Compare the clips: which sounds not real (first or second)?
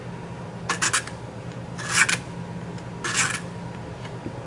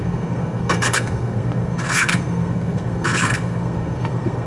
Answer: second